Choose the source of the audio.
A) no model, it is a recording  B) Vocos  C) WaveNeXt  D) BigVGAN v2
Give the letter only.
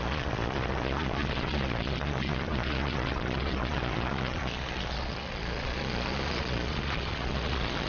B